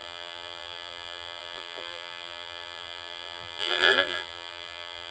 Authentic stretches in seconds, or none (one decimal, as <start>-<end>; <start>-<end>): none